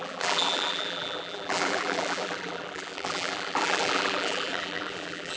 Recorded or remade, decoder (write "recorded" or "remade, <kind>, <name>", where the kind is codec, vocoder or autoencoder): remade, vocoder, BigVGAN v2